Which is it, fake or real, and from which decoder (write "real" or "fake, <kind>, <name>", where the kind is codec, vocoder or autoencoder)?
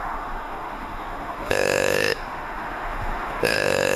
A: fake, autoencoder, DAC-VAE